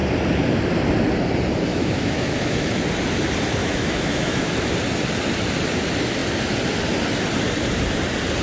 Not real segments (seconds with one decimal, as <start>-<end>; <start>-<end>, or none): 1.7-2.8; 3.6-4.7